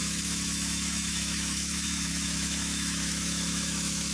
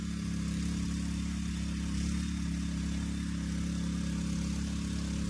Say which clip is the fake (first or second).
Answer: first